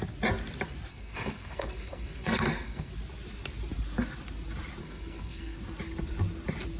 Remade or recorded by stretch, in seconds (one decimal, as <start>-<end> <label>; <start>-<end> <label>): 0.0-0.9 recorded; 0.9-2.9 remade; 2.9-4.8 recorded; 4.8-5.6 remade; 5.6-6.8 recorded